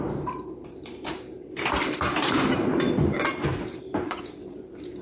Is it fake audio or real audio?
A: fake